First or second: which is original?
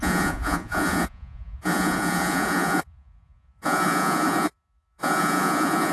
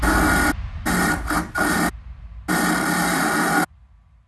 second